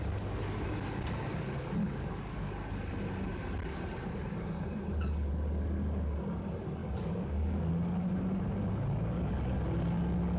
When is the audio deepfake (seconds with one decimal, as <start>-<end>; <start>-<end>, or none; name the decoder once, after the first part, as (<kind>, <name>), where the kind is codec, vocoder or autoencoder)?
1.8-2.7 (codec, DAC); 6.8-7.7